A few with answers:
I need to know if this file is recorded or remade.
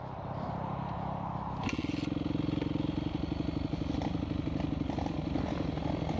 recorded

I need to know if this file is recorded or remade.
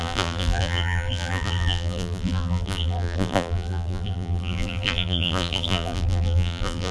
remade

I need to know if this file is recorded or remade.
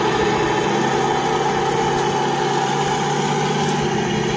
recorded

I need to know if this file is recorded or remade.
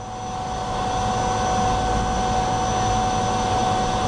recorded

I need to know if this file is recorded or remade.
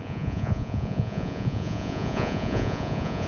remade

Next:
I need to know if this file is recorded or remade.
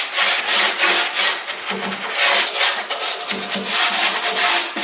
recorded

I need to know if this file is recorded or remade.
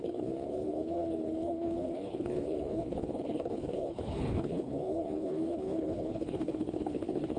remade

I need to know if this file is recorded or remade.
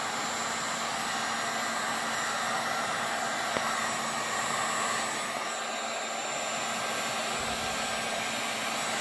recorded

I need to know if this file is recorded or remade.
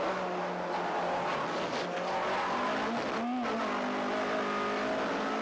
recorded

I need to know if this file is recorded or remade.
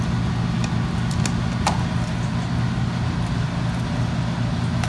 recorded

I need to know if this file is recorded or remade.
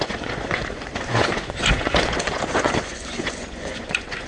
remade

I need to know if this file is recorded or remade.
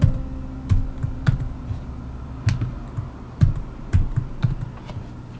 recorded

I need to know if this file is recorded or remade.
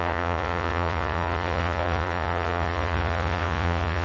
remade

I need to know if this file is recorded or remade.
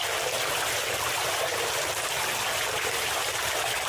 recorded